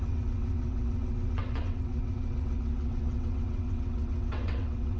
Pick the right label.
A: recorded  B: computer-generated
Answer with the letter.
B